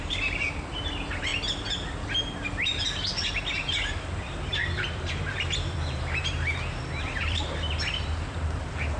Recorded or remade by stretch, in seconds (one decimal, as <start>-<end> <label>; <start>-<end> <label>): 0.0-1.3 remade; 1.3-3.5 recorded; 3.5-9.0 remade